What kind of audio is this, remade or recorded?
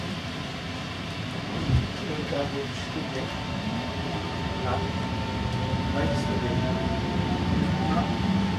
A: recorded